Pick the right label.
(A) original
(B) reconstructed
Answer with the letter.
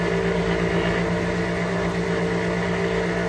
A